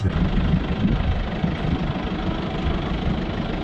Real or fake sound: real